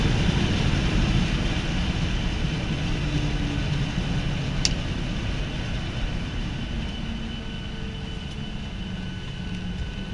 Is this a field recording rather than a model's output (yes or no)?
yes